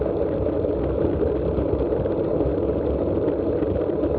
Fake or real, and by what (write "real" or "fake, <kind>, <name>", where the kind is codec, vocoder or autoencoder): real